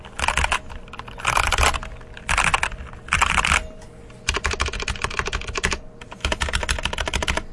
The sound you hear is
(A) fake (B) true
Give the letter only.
B